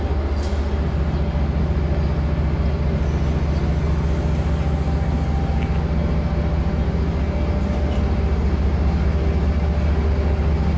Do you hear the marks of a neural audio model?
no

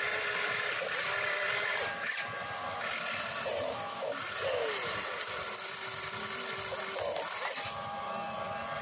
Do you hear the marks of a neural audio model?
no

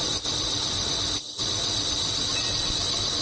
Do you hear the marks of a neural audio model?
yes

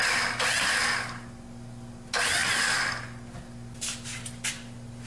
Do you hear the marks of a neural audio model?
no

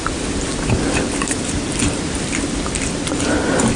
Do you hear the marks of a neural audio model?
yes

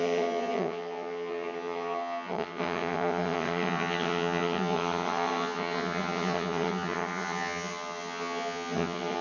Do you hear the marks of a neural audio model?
yes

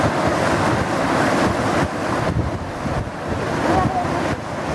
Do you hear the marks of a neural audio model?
no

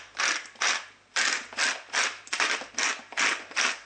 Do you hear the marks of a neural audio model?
no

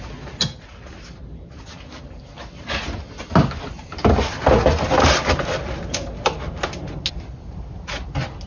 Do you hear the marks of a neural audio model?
no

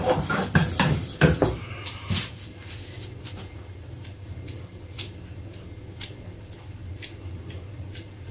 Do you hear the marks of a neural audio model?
no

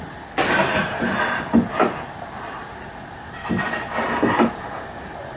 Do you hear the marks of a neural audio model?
no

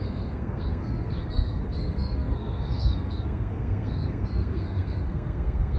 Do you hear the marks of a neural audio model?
yes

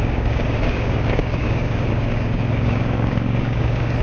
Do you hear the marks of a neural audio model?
yes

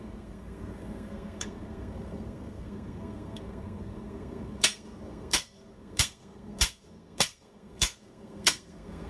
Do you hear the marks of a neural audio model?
yes